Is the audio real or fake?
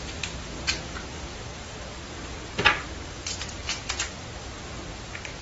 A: real